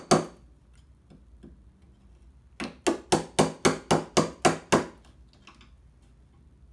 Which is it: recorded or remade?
recorded